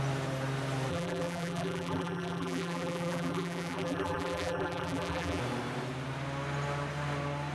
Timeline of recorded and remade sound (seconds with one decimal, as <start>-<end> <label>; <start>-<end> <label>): 0.0-0.9 recorded; 0.9-5.4 remade; 5.4-7.5 recorded